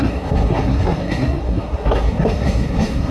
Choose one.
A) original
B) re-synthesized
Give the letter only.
B